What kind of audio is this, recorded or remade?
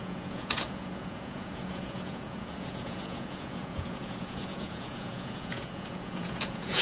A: remade